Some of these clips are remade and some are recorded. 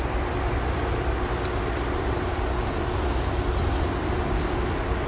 recorded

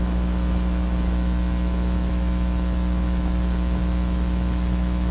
remade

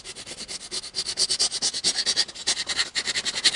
recorded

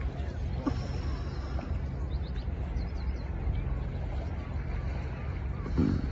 recorded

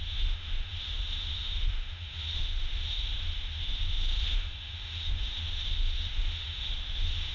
remade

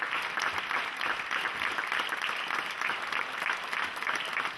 recorded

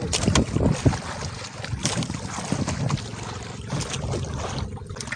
recorded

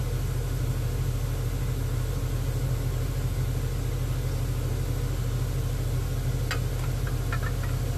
recorded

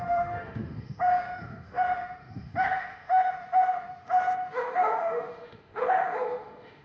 remade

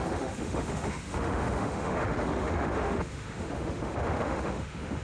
remade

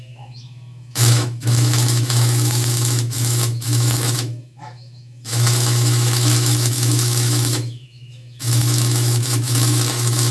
remade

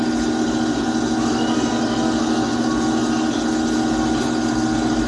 recorded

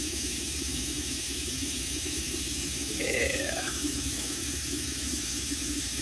remade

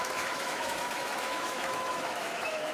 remade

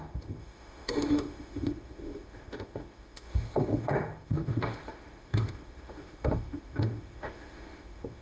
remade